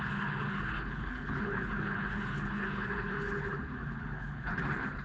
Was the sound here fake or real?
fake